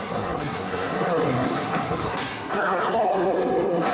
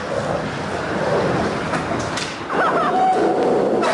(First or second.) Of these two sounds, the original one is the second